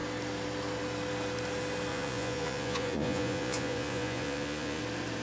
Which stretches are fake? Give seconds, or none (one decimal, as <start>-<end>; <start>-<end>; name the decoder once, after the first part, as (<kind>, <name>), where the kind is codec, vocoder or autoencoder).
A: 1.9-4.8 (vocoder, Vocos)